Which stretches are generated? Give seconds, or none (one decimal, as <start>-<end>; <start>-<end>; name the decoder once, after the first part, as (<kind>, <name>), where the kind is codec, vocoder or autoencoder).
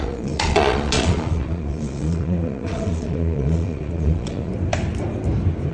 0.0-4.5 (vocoder, Vocos)